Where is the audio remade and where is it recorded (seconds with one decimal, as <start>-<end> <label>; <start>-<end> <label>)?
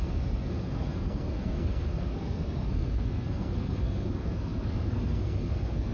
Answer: 0.0-5.9 remade